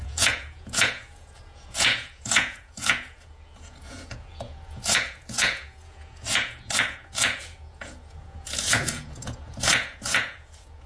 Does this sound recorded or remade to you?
remade